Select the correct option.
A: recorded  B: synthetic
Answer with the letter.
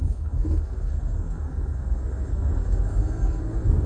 B